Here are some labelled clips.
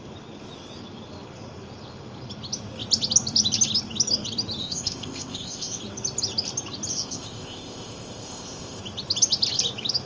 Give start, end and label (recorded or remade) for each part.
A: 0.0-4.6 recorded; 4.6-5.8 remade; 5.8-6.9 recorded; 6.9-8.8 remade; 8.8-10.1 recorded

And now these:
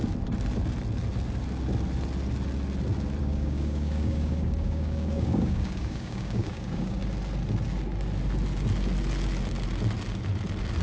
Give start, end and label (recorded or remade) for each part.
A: 0.0-3.2 recorded; 3.2-7.0 remade; 7.0-10.8 recorded

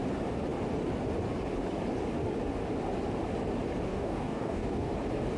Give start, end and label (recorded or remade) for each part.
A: 0.0-3.9 recorded; 3.9-4.9 remade; 4.9-5.4 recorded

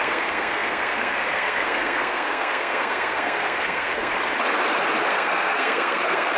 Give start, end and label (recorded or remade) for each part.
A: 0.0-4.1 remade; 4.1-5.1 recorded; 5.1-6.4 remade

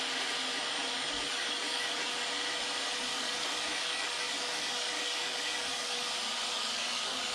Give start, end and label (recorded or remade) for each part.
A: 0.0-0.6 recorded; 0.6-2.1 remade; 2.1-3.1 recorded; 3.1-6.1 remade; 6.1-6.5 recorded; 6.5-7.3 remade

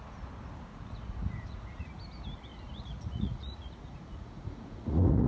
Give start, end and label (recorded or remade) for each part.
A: 0.0-0.7 recorded; 0.7-1.9 remade; 1.9-2.5 recorded; 2.5-5.3 remade

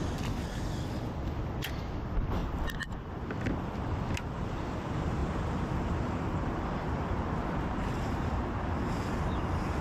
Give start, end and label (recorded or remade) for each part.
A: 0.0-9.8 recorded